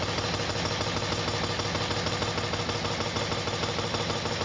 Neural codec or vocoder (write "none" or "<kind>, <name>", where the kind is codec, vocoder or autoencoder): none